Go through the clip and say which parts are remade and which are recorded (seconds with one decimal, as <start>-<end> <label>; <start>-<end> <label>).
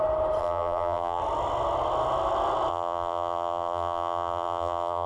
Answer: 0.0-0.4 recorded; 0.4-1.2 remade; 1.2-2.7 recorded; 2.7-5.1 remade